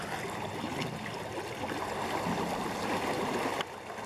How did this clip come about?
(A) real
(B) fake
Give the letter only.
A